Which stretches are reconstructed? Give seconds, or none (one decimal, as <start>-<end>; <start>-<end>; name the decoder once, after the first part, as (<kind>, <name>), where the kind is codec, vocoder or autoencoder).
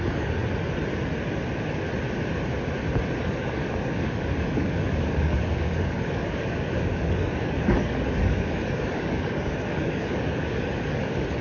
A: 0.0-0.4 (codec, DAC); 3.2-11.4